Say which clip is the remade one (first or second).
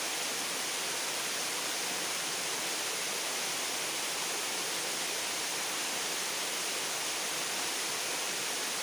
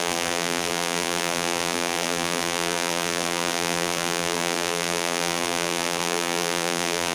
second